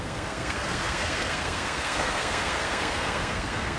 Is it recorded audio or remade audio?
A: remade